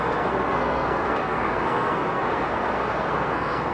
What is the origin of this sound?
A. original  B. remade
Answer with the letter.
B